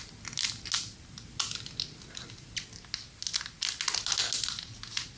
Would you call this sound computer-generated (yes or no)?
no